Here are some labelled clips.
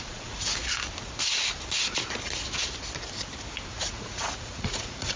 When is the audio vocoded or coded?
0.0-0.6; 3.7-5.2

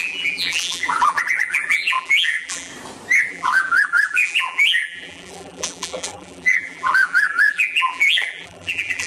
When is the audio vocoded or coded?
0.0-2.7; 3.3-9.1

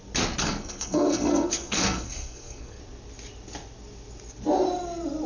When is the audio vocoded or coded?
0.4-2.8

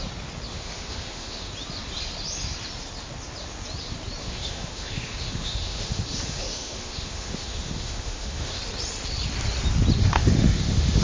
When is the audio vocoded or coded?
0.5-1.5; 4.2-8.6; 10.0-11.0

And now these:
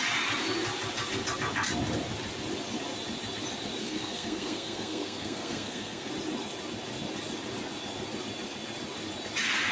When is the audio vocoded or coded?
3.8-6.1